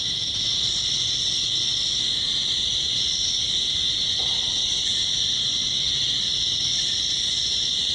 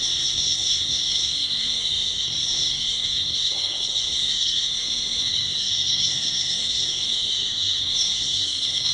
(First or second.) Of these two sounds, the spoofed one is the second